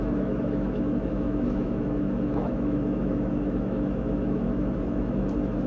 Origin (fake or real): fake